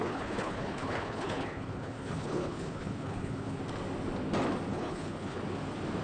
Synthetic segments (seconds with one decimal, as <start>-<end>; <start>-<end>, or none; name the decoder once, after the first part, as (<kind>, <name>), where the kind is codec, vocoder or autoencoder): 0.0-3.6 (codec, HILCodec); 4.7-5.4